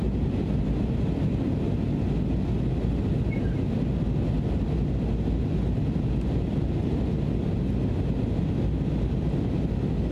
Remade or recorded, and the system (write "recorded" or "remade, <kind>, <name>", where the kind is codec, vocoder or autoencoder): recorded